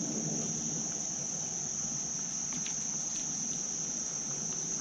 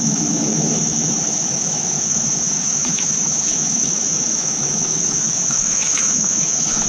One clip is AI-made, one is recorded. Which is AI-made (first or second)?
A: second